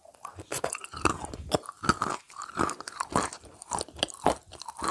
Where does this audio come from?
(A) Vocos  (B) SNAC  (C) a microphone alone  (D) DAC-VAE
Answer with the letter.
C